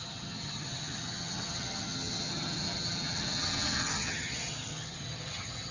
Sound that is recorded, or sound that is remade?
remade